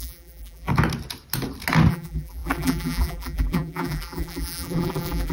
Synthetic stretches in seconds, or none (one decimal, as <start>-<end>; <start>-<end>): 0.0-0.7; 1.9-5.3